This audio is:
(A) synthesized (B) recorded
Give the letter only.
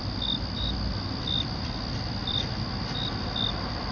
B